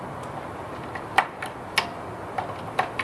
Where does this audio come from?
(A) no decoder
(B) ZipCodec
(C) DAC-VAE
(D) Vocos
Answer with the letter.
A